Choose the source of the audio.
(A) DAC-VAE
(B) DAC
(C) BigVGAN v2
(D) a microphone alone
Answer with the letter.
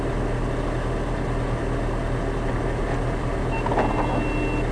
D